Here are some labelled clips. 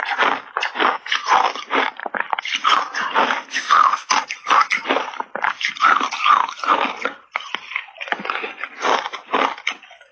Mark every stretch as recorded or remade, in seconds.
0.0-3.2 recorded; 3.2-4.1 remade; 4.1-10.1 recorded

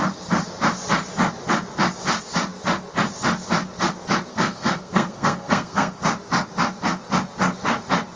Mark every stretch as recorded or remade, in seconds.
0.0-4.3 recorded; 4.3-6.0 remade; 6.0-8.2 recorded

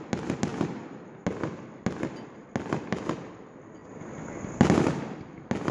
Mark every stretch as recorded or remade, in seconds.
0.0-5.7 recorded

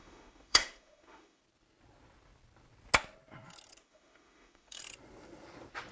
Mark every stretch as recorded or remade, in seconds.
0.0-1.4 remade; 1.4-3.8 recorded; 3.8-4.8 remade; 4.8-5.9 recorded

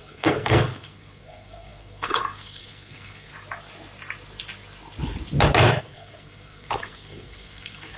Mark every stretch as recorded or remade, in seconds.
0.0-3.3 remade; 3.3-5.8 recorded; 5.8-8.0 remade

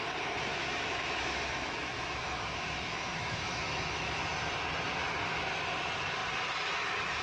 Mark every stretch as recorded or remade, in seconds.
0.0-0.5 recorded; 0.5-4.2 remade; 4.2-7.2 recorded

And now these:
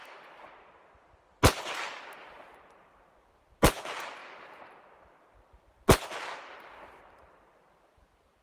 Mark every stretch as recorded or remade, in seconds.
0.0-8.4 recorded